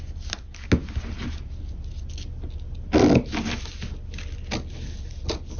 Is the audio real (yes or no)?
yes